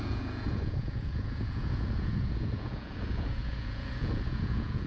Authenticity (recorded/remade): remade